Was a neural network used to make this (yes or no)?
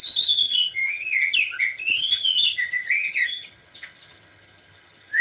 yes